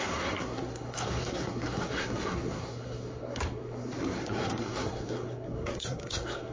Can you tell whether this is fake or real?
fake